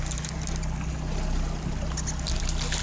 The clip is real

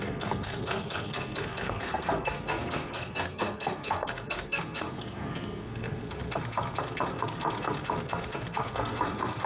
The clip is fake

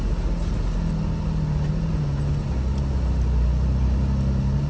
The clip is real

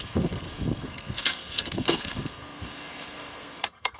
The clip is fake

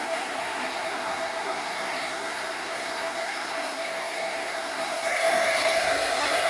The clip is fake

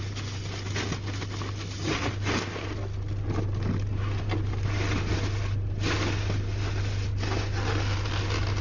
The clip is real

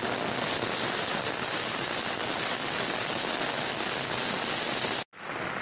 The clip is real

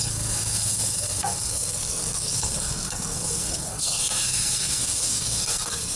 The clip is fake